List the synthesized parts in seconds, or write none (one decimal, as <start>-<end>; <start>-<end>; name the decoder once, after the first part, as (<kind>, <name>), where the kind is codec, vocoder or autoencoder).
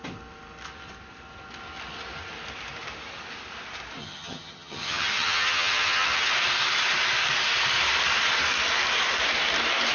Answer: 4.0-6.3 (vocoder, HiFi-GAN)